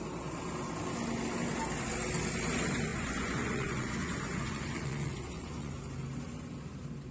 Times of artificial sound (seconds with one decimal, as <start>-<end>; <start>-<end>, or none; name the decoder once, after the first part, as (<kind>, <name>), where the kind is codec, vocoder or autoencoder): 2.9-5.7 (vocoder, Vocos)